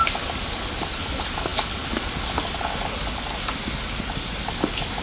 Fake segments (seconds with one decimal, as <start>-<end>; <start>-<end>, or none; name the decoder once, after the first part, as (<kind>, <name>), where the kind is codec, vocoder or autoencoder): none